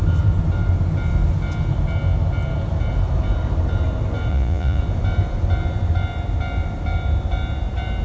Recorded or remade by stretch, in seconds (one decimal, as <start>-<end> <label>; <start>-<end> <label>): 0.0-4.3 recorded; 4.3-4.8 remade; 4.8-8.0 recorded